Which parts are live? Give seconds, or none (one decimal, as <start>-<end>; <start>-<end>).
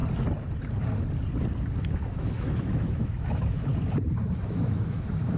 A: 0.0-1.8; 3.7-4.4